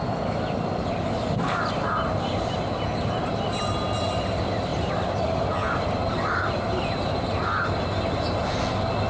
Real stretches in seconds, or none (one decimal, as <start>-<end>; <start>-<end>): 0.0-4.7; 6.1-9.1